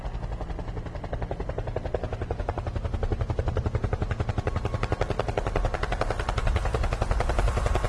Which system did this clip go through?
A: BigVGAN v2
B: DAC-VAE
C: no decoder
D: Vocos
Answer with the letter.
C